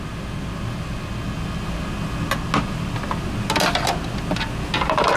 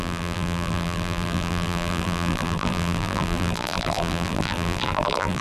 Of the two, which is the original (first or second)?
first